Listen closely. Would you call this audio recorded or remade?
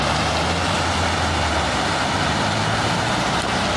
recorded